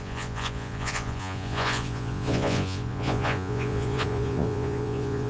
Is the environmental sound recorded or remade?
remade